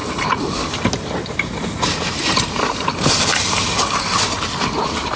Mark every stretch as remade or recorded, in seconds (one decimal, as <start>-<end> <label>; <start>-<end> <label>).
0.0-5.2 recorded